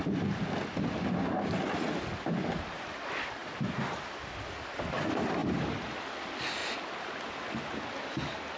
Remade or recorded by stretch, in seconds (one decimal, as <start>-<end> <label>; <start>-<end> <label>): 0.0-3.4 recorded; 3.4-4.6 remade; 4.6-5.4 recorded; 5.4-5.9 remade; 5.9-8.6 recorded